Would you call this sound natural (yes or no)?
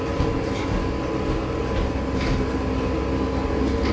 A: yes